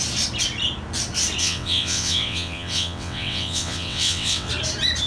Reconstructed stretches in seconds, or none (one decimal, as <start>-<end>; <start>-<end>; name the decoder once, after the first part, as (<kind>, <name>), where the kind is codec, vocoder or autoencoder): 1.4-4.5 (vocoder, WaveNeXt)